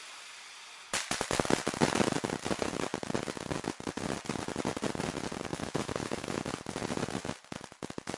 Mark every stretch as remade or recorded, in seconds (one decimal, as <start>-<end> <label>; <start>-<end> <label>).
0.0-5.5 recorded; 5.5-6.4 remade; 6.4-8.2 recorded